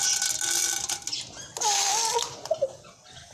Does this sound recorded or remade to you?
recorded